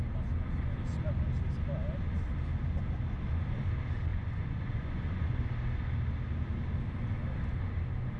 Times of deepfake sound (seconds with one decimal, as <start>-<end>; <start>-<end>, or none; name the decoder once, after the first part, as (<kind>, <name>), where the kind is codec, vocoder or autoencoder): 4.1-5.4 (vocoder, Vocos)